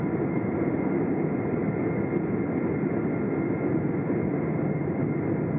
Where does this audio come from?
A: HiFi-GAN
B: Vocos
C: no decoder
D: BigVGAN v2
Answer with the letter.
C